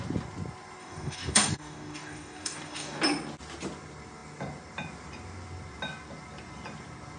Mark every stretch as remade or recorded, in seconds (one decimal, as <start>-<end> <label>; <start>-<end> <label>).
0.0-0.8 recorded; 0.8-3.0 remade; 3.0-7.2 recorded